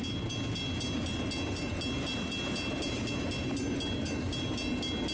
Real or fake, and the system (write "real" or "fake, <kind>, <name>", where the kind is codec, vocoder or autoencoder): real